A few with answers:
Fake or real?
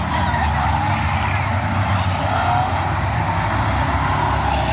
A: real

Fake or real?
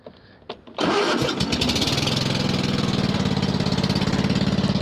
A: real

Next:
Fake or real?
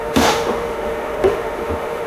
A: fake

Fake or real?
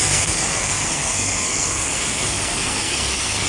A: fake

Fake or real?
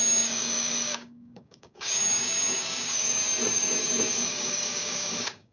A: fake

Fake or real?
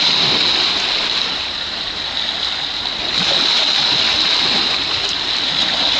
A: real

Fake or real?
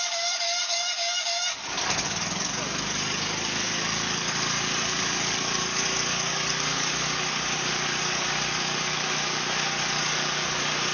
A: fake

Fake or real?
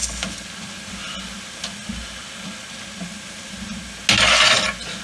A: real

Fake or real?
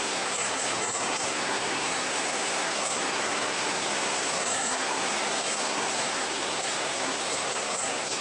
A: fake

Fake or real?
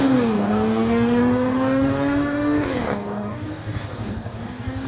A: fake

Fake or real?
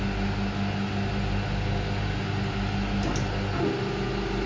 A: real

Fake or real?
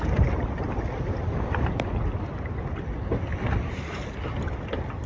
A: real